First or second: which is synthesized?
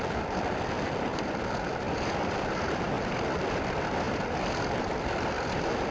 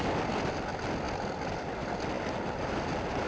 first